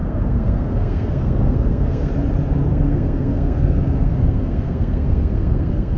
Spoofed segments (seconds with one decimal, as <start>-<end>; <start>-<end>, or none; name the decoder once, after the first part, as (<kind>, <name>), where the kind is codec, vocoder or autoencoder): 0.0-2.1 (codec, SNAC); 2.7-6.0